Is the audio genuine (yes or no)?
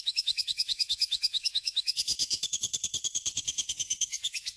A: no